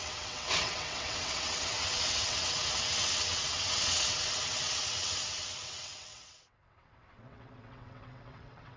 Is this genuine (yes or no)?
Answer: no